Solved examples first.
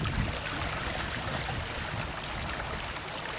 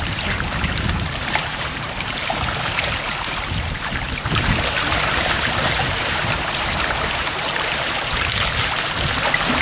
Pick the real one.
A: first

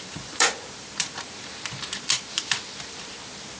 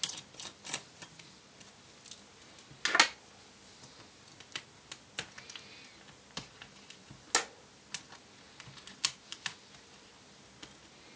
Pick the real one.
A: second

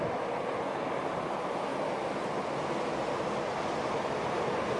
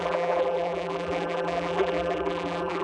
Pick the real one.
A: first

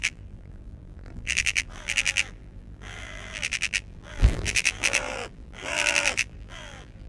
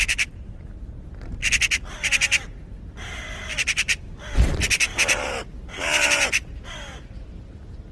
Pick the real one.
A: second